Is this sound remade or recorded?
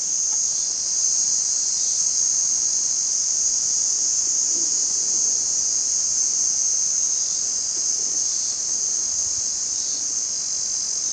remade